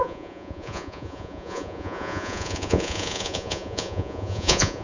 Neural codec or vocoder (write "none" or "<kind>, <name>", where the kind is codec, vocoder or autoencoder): vocoder, Vocos